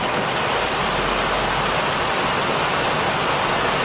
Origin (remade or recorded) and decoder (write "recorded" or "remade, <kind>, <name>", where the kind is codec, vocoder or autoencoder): recorded